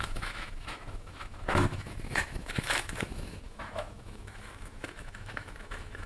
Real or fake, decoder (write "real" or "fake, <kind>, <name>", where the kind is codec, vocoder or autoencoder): fake, autoencoder, DAC-VAE